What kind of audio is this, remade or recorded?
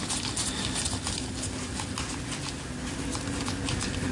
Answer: recorded